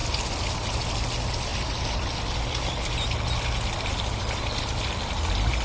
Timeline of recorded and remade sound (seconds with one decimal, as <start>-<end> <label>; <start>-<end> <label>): 0.0-5.6 recorded